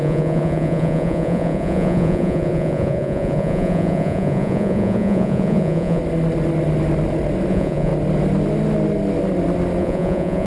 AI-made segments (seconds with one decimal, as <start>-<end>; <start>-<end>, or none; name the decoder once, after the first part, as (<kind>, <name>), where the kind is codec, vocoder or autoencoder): 0.0-6.0 (vocoder, Vocos); 7.5-7.9; 9.8-10.5

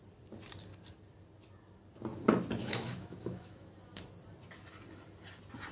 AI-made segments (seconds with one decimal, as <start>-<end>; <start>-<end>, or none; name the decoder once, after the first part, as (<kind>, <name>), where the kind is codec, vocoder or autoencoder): 2.6-3.7 (autoencoder, DAC-VAE)